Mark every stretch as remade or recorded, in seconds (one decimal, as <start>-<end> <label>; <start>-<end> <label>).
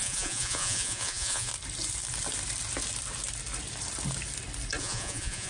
0.0-1.5 remade; 1.5-4.8 recorded; 4.8-5.5 remade